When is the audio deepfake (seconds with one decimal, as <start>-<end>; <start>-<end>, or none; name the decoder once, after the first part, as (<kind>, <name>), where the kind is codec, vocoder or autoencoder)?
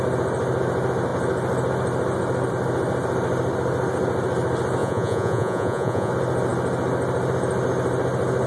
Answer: 4.8-6.1 (vocoder, Vocos)